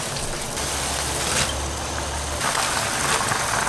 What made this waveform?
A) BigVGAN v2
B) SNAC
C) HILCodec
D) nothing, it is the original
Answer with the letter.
D